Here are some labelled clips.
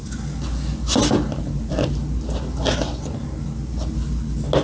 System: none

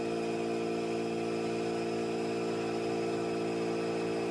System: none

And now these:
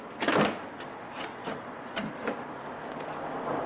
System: none